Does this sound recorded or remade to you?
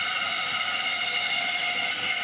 recorded